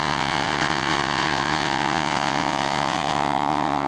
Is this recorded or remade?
remade